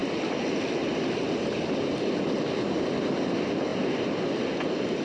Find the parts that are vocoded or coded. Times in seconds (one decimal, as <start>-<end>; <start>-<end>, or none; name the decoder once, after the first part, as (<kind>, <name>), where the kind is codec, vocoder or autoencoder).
none